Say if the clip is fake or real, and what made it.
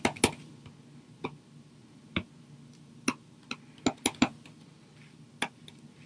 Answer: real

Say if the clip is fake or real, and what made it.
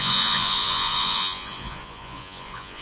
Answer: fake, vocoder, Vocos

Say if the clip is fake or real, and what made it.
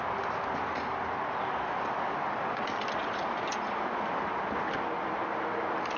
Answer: real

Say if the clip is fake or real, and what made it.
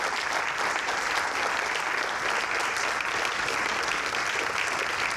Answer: real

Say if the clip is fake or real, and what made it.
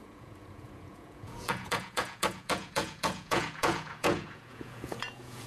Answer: fake, vocoder, Vocos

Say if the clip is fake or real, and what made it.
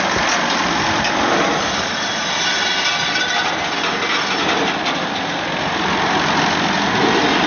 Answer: real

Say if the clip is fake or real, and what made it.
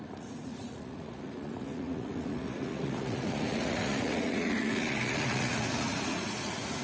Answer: fake, vocoder, Vocos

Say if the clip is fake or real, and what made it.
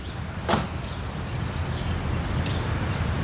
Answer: real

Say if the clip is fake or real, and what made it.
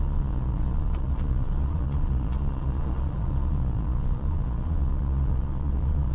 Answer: fake, vocoder, Vocos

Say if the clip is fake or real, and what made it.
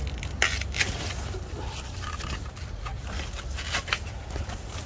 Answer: real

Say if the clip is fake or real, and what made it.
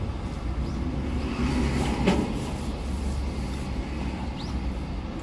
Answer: real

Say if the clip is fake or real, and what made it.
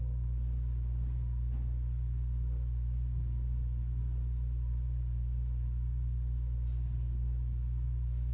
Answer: real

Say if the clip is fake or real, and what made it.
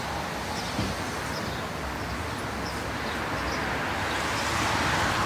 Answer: real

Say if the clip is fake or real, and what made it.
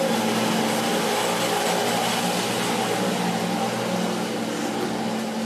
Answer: real